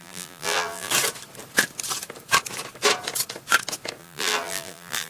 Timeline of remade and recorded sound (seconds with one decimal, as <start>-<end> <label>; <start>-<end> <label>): 0.0-0.9 remade; 0.9-4.0 recorded; 4.0-5.1 remade